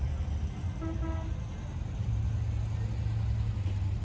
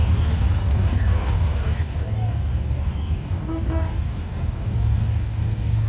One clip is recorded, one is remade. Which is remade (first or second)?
second